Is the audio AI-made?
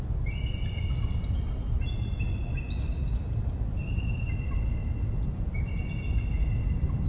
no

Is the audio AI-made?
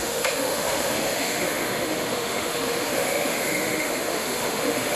yes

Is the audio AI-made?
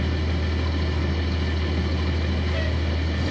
no